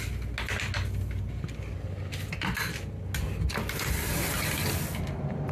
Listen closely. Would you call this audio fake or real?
real